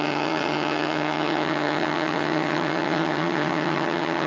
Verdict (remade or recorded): remade